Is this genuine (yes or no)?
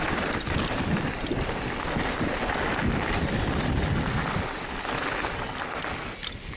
yes